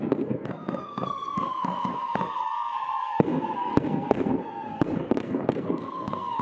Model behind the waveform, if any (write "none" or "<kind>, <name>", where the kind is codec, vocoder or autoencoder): codec, SNAC